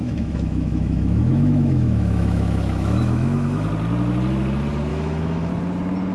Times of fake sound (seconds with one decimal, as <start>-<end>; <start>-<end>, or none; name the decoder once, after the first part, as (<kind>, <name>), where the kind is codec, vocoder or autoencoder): 0.0-3.7 (autoencoder, DAC-VAE); 4.9-5.5